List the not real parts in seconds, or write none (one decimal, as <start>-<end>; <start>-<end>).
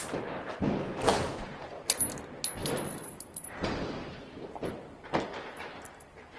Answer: 1.1-1.7; 2.6-6.4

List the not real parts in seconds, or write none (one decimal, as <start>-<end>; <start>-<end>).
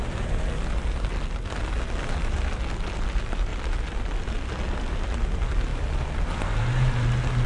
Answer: none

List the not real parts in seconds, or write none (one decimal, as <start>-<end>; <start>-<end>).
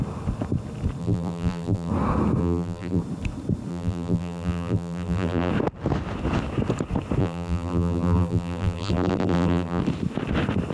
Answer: 1.0-1.9; 2.4-3.0; 3.7-5.5; 7.2-9.8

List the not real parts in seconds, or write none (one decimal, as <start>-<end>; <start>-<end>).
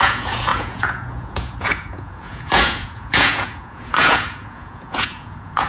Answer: 0.0-5.7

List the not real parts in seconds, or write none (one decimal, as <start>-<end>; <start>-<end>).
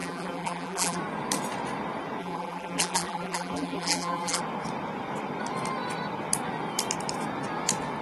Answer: 0.0-1.0; 2.2-4.4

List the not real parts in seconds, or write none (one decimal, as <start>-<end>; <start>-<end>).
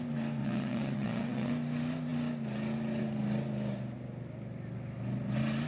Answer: 0.4-1.5